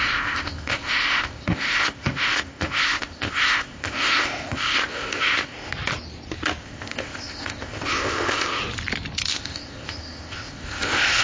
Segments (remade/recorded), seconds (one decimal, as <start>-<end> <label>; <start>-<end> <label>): 0.0-5.7 remade; 5.7-6.6 recorded; 6.6-8.6 remade; 8.6-9.3 recorded; 9.3-11.2 remade

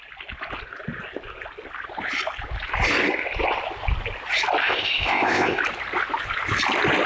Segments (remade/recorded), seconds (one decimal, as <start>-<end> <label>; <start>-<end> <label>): 0.0-4.6 recorded; 4.6-5.6 remade; 5.6-7.1 recorded

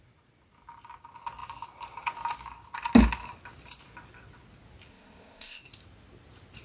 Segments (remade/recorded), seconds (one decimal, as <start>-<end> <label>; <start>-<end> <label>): 0.0-4.9 recorded; 4.9-5.6 remade; 5.6-6.6 recorded